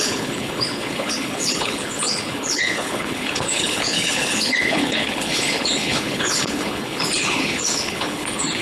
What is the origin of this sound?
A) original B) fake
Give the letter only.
B